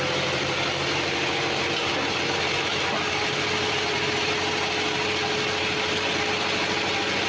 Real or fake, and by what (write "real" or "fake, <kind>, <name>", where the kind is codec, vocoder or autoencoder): real